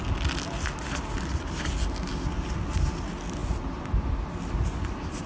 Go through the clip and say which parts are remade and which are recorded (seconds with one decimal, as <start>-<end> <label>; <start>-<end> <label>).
0.0-5.3 recorded